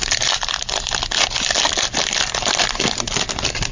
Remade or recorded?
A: recorded